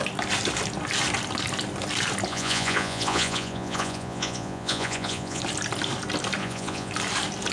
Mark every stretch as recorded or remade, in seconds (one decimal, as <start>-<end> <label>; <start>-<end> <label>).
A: 0.0-2.3 recorded; 2.3-5.4 remade; 5.4-6.4 recorded; 6.4-6.9 remade; 6.9-7.5 recorded

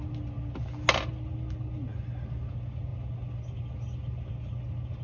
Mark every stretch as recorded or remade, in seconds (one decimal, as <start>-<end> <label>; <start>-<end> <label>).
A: 0.0-5.0 recorded

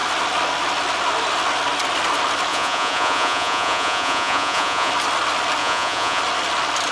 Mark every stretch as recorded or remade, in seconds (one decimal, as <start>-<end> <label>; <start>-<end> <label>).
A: 0.0-2.5 recorded; 2.5-4.9 remade; 4.9-5.6 recorded; 5.6-6.2 remade; 6.2-6.9 recorded